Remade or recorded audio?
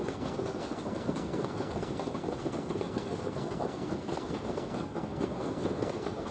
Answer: remade